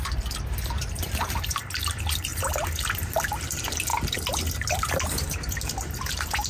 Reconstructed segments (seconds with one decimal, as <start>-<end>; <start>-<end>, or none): 0.0-3.9; 4.7-6.5

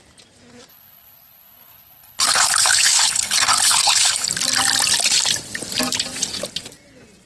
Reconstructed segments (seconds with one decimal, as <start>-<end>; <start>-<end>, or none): 0.7-4.3